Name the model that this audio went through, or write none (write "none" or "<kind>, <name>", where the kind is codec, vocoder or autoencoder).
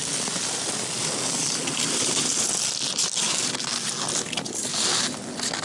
none